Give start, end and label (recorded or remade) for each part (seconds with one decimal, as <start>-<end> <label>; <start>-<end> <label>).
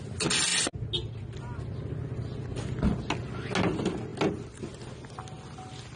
0.0-6.0 recorded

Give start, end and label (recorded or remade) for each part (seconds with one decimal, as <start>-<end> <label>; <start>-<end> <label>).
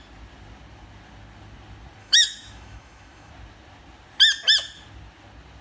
0.0-2.0 recorded; 2.0-3.3 remade; 3.3-5.6 recorded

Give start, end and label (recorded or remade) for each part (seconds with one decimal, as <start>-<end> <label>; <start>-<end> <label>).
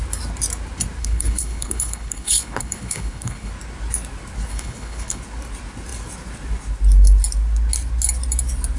0.0-1.0 recorded; 1.0-3.5 remade; 3.5-4.5 recorded; 4.5-5.2 remade; 5.2-8.8 recorded